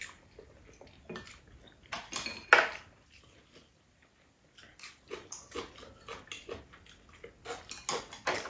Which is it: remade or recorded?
recorded